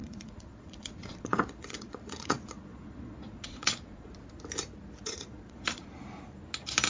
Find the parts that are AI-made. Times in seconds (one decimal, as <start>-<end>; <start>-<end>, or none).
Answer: 0.0-4.1; 5.0-5.8